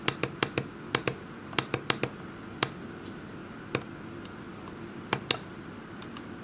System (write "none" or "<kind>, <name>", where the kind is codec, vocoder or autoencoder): none